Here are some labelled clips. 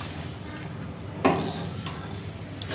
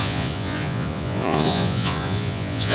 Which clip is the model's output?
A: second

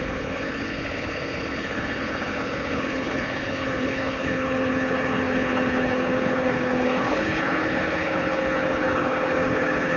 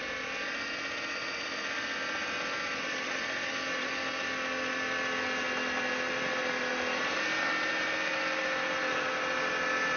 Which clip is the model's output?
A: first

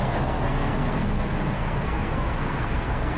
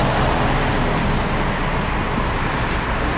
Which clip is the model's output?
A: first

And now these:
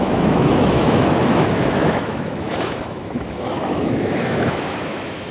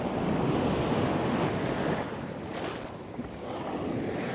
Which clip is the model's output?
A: first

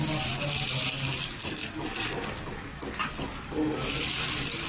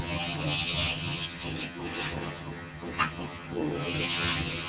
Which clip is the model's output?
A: second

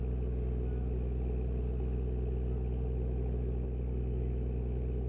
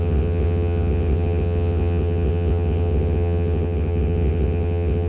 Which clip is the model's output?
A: second